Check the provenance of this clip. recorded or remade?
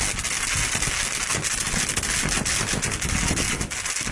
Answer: recorded